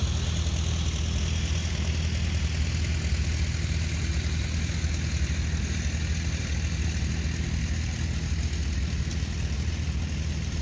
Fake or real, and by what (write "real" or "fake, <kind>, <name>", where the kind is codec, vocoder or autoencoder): real